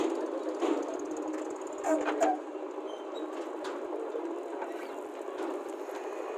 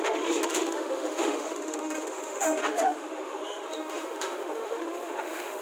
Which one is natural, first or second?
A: first